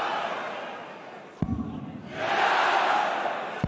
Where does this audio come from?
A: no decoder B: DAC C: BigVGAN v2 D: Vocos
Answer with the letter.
A